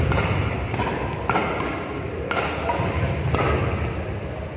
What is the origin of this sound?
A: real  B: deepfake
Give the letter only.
A